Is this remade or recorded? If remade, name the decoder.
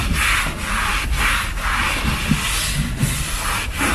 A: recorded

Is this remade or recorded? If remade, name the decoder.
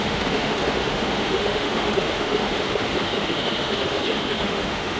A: remade, autoencoder, DAC-VAE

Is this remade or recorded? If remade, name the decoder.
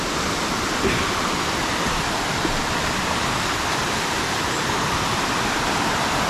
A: remade, vocoder, BigVGAN v2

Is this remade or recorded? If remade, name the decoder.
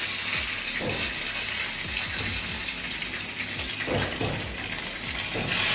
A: recorded